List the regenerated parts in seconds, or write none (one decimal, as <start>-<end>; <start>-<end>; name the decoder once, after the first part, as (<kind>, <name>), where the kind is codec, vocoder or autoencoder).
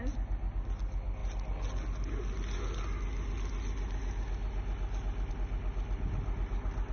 none